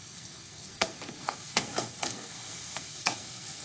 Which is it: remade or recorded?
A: remade